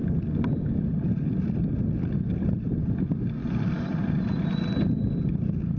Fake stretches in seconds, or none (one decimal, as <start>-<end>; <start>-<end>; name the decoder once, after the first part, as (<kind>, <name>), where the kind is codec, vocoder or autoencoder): 3.4-4.2 (vocoder, BigVGAN v2)